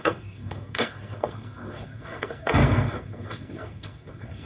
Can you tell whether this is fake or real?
fake